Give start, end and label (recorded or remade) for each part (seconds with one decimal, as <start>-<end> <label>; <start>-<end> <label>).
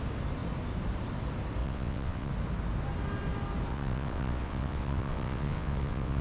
0.0-1.6 recorded; 1.6-2.3 remade; 2.3-3.7 recorded; 3.7-6.2 remade